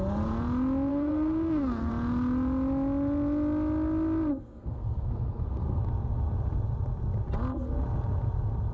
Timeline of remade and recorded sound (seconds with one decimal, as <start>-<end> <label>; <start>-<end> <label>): 0.0-0.9 recorded; 0.9-1.9 remade; 1.9-4.3 recorded; 4.3-5.8 remade; 5.8-8.7 recorded